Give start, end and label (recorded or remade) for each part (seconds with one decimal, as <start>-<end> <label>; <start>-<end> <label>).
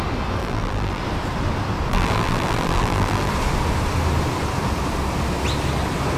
0.0-0.4 recorded; 0.4-1.0 remade; 1.0-1.9 recorded; 1.9-3.3 remade; 3.3-6.2 recorded